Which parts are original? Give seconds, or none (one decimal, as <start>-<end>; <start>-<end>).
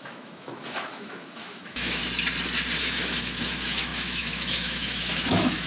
2.0-2.8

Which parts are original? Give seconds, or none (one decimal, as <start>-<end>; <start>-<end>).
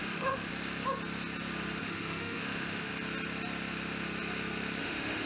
0.5-1.8; 2.9-4.8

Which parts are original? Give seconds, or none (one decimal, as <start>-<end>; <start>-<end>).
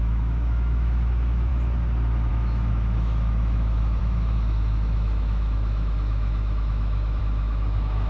1.5-2.3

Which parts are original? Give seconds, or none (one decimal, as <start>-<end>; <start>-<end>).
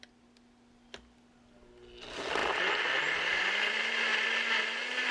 0.0-5.1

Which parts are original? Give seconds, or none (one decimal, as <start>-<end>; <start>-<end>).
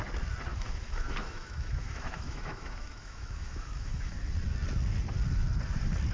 0.0-0.5; 4.2-6.1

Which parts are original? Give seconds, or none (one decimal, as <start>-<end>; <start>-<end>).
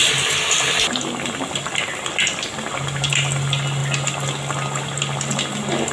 0.0-5.9